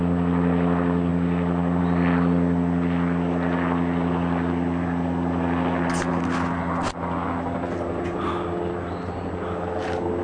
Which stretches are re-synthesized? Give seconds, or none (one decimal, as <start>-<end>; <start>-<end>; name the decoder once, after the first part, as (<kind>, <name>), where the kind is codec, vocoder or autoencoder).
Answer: none